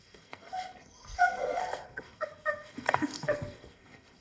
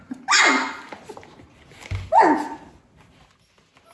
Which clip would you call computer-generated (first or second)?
first